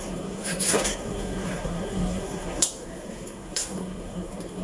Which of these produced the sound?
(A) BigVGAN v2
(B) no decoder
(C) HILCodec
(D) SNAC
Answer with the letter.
D